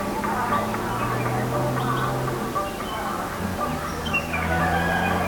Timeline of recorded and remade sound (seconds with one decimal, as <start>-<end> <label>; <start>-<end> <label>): 0.0-3.9 recorded; 3.9-4.6 remade; 4.6-5.3 recorded